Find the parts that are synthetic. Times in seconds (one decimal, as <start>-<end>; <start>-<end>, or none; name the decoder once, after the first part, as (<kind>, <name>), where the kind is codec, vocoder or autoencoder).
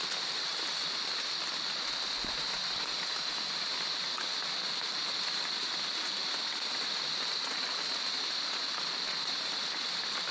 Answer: none